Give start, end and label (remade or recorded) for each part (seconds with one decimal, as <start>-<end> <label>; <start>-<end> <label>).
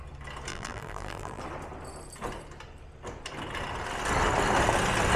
0.0-0.5 recorded; 0.5-1.4 remade; 1.4-5.2 recorded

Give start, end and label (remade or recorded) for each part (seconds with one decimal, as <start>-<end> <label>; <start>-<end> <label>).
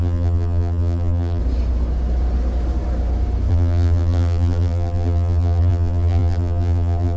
0.0-1.4 remade; 1.4-3.5 recorded; 3.5-7.2 remade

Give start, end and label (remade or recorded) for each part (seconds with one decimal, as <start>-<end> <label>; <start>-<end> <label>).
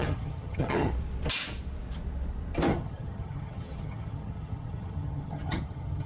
0.0-0.9 remade; 0.9-2.7 recorded; 2.7-6.1 remade